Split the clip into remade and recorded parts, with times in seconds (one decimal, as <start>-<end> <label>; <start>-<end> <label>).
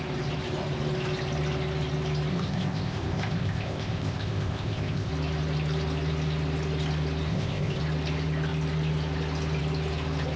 0.0-2.3 recorded; 2.3-5.1 remade; 5.1-7.3 recorded; 7.3-7.8 remade; 7.8-10.4 recorded